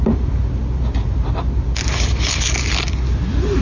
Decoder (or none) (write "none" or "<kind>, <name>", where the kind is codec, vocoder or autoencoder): none